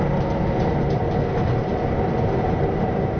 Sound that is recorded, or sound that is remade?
recorded